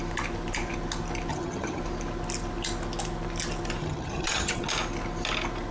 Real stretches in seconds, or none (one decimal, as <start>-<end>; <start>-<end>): 0.0-1.3; 1.8-3.8; 4.7-5.7